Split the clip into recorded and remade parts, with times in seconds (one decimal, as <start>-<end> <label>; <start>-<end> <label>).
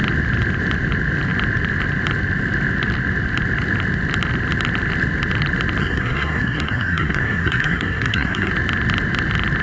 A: 0.0-5.8 recorded; 5.8-8.5 remade; 8.5-9.6 recorded